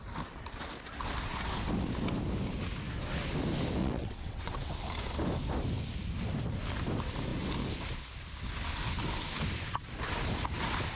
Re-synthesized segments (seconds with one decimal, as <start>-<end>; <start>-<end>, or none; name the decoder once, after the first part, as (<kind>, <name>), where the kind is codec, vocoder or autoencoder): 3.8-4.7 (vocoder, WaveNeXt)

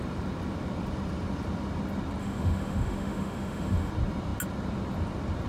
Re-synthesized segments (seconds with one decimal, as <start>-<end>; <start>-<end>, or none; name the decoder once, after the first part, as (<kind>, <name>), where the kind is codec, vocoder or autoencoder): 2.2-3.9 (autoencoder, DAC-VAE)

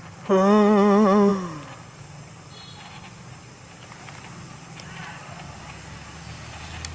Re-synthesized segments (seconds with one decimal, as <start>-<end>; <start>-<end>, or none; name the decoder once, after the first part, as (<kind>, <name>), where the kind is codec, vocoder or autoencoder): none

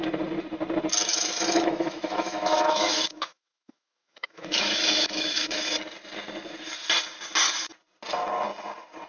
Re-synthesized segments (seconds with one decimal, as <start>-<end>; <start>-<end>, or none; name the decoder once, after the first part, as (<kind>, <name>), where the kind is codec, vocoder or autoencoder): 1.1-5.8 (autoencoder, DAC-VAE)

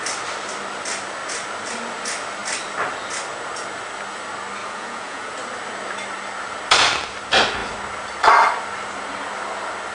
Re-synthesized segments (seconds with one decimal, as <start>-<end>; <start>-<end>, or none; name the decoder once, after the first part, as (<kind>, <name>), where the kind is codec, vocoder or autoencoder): 4.6-5.3 (vocoder, Vocos)

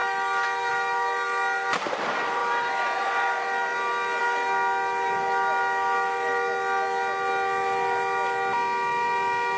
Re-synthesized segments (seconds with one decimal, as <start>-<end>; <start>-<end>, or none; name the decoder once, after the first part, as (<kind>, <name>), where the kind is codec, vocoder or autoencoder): none

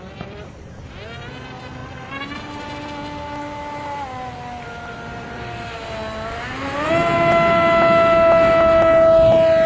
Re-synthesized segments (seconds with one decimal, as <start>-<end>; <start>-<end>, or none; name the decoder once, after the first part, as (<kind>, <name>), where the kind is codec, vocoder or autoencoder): none